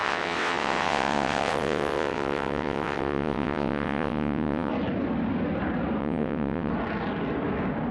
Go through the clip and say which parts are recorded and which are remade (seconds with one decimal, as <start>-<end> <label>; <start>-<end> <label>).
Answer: 0.0-4.7 remade; 4.7-6.0 recorded; 6.0-6.7 remade; 6.7-7.9 recorded